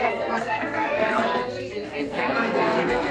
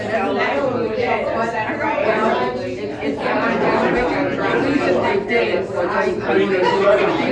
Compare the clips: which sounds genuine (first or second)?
second